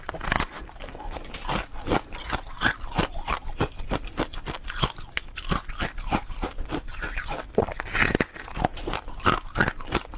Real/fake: real